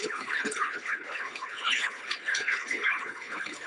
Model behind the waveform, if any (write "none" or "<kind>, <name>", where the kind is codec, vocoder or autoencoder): codec, HILCodec